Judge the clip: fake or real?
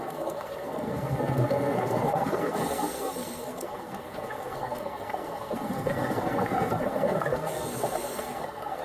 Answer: fake